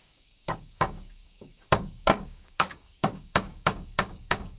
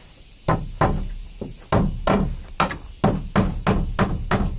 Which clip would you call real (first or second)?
second